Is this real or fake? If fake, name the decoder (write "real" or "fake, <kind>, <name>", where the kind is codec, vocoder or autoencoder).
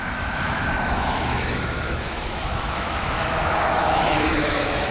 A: fake, autoencoder, DAC-VAE